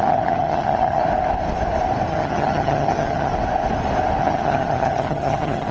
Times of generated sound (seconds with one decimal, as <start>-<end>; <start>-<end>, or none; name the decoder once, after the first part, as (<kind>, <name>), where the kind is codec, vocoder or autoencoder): 0.0-1.0 (vocoder, HiFi-GAN); 2.1-3.3; 4.2-5.7